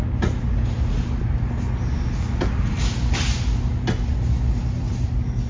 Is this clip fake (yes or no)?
no